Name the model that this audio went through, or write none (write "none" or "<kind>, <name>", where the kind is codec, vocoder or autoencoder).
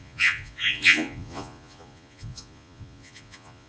vocoder, Vocos